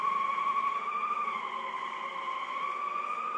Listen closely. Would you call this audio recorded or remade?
recorded